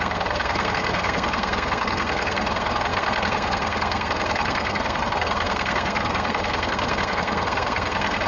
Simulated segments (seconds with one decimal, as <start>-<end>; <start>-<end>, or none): 0.0-8.3